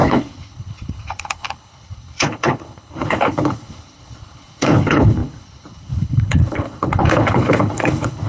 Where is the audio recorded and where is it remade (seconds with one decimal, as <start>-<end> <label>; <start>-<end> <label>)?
0.0-8.3 remade